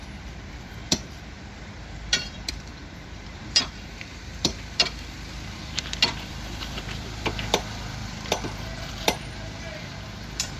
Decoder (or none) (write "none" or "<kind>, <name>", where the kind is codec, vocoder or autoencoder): vocoder, BigVGAN v2